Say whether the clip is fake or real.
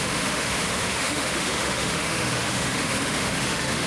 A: fake